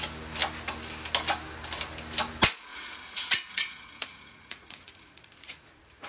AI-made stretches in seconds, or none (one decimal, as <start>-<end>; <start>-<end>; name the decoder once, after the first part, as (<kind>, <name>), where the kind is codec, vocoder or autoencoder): 2.7-6.1 (vocoder, Vocos)